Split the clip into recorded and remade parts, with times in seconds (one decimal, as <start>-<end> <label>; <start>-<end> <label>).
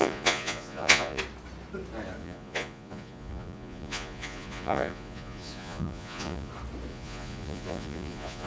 0.0-1.2 remade; 1.2-2.2 recorded; 2.2-6.5 remade; 6.5-6.9 recorded; 6.9-8.5 remade